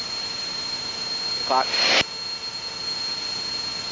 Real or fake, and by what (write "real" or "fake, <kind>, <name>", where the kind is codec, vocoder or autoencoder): real